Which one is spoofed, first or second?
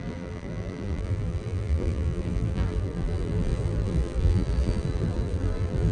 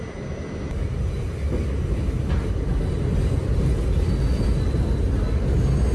first